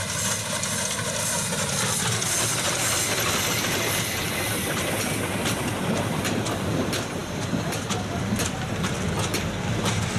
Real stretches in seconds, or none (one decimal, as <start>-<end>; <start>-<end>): 0.0-7.2; 7.9-10.2